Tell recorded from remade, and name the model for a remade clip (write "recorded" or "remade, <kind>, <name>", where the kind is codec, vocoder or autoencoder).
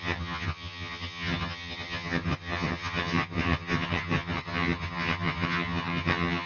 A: remade, vocoder, HiFi-GAN